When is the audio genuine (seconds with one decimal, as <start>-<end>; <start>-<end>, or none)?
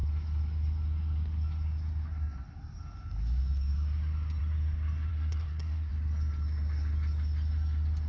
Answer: 0.0-5.1; 5.9-8.1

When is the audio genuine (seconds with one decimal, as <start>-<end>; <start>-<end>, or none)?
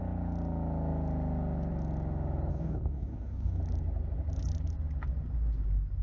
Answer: 0.0-2.5; 3.6-6.0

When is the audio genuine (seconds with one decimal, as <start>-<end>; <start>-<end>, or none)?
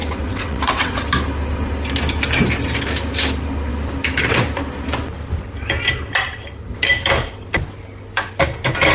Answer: 1.0-8.9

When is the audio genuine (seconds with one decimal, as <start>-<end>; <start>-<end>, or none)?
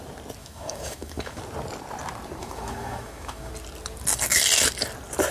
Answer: 0.0-0.4; 1.4-2.4; 3.5-5.3